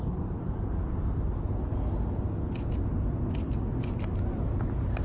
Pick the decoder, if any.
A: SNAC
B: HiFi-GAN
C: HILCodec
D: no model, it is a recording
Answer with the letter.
D